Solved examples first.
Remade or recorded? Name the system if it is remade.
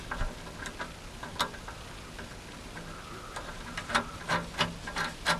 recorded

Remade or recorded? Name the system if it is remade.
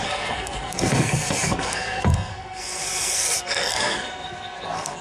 remade, codec, SNAC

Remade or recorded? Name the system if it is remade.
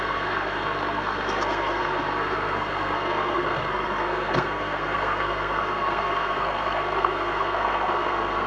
remade, codec, SNAC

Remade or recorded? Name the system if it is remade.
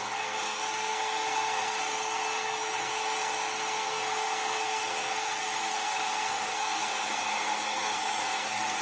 remade, codec, SNAC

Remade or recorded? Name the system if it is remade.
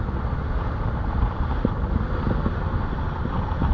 recorded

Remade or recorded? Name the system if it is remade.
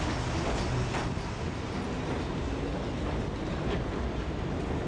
recorded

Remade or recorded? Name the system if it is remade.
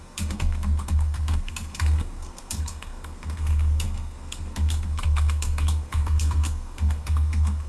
remade, codec, SNAC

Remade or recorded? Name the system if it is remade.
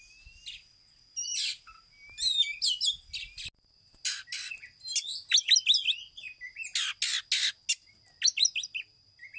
recorded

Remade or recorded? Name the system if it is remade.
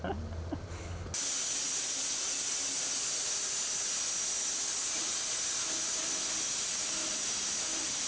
recorded